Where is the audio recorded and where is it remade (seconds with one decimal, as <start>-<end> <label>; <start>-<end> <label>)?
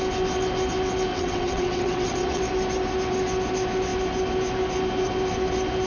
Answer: 0.0-1.1 recorded; 1.1-2.4 remade; 2.4-5.9 recorded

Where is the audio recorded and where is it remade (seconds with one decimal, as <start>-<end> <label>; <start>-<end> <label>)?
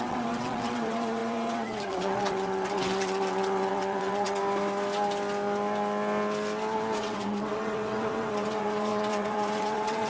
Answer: 0.0-4.4 remade; 4.4-7.0 recorded; 7.0-10.1 remade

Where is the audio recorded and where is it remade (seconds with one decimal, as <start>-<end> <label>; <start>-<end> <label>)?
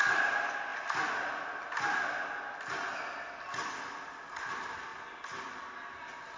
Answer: 0.0-6.4 recorded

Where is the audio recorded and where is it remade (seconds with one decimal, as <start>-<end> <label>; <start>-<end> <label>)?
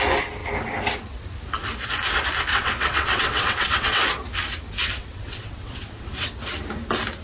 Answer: 0.0-2.5 recorded; 2.5-4.0 remade; 4.0-5.0 recorded; 5.0-6.3 remade; 6.3-7.2 recorded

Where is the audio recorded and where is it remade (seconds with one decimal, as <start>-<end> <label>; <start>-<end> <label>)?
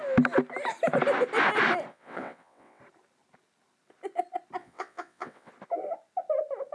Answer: 0.0-1.9 recorded; 1.9-2.8 remade; 2.8-4.6 recorded; 4.6-5.5 remade; 5.5-6.7 recorded